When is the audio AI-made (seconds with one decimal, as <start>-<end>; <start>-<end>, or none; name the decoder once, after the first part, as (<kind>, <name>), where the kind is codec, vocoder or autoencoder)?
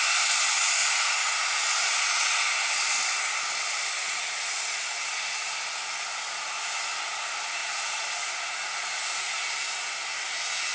0.8-2.4 (vocoder, Vocos); 4.0-4.9; 7.6-9.4